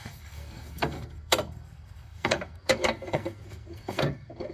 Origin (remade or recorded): remade